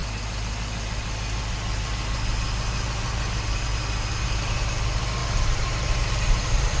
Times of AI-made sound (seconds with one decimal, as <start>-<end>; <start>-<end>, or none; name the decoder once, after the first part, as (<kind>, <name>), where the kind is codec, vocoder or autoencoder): 5.2-6.8 (vocoder, BigVGAN v2)